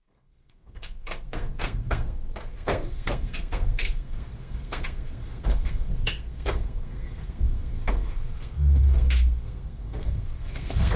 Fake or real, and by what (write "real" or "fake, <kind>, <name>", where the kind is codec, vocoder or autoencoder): fake, codec, SNAC